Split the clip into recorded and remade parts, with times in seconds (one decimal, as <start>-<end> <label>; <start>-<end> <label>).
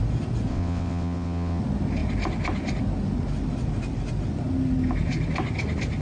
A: 0.0-0.5 recorded; 0.5-1.6 remade; 1.6-6.0 recorded